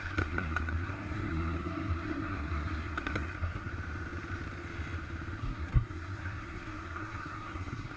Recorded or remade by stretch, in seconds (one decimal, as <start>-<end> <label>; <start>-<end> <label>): 0.0-3.7 remade; 3.7-5.4 recorded; 5.4-8.0 remade